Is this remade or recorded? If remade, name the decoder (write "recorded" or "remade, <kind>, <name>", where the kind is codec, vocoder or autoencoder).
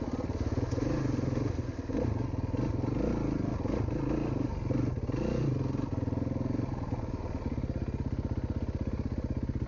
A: recorded